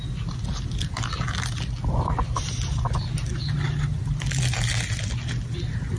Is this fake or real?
real